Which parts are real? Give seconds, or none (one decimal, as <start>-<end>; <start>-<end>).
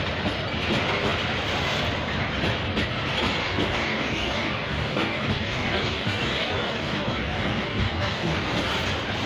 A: 0.0-3.4; 8.6-9.3